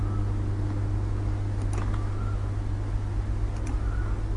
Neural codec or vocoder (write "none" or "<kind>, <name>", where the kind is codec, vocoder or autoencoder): none